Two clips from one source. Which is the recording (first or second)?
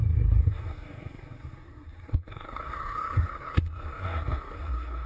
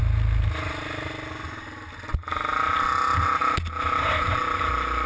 second